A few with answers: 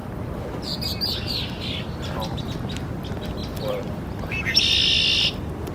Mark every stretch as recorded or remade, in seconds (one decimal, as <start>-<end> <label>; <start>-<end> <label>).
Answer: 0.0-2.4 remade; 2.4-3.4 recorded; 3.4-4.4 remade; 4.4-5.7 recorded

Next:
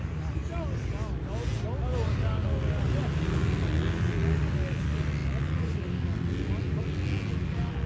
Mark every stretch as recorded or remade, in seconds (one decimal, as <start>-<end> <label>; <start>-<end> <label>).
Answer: 0.0-7.9 recorded

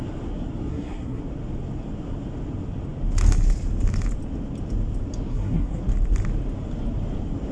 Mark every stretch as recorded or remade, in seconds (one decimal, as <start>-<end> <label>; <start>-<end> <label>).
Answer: 0.0-0.7 recorded; 0.7-1.2 remade; 1.2-5.3 recorded; 5.3-5.8 remade; 5.8-7.5 recorded